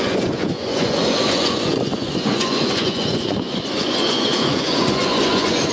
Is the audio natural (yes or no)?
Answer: no